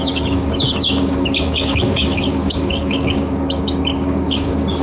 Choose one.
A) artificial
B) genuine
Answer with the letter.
A